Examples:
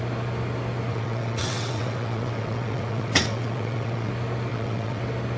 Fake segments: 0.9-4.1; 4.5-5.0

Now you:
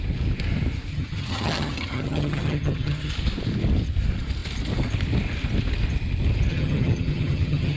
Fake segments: 0.9-3.1; 6.5-7.8

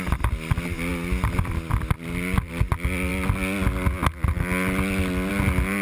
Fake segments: none

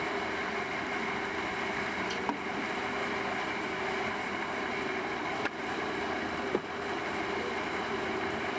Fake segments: 0.0-0.4; 1.3-2.8; 3.6-8.6